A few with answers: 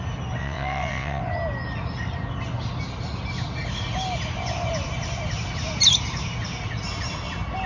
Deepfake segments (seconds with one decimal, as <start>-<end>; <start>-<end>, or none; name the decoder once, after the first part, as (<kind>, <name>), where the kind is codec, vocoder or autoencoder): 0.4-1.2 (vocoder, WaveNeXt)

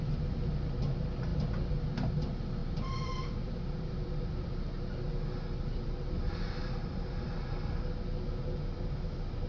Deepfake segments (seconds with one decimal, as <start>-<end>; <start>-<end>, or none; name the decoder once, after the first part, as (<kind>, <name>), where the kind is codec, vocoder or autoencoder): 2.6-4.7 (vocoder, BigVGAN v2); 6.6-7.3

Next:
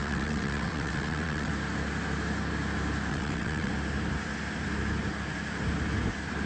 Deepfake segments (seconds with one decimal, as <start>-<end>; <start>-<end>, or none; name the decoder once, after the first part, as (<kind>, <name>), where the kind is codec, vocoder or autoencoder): 0.0-1.5 (vocoder, WaveNeXt); 3.1-3.7